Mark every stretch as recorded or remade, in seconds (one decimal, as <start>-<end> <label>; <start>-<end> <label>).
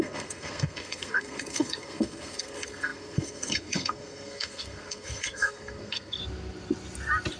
0.0-6.2 remade; 6.2-7.4 recorded